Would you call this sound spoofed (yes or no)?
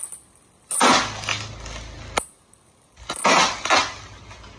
no